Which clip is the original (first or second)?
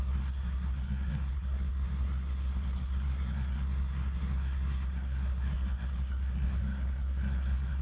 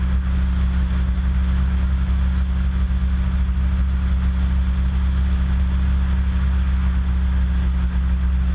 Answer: second